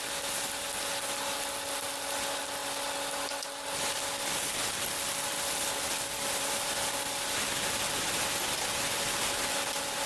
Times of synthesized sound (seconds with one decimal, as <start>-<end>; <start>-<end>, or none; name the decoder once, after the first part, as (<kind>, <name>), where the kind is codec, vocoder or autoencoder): none